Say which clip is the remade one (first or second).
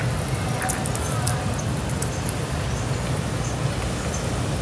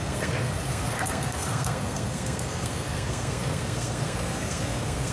second